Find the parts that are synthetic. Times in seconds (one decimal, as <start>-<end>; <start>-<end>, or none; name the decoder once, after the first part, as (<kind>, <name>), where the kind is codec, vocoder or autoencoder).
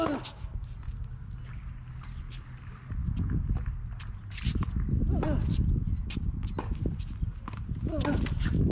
none